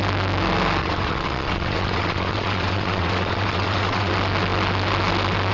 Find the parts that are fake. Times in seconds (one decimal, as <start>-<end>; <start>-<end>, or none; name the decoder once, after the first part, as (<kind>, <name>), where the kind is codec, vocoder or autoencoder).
0.8-4.1 (vocoder, WaveNeXt)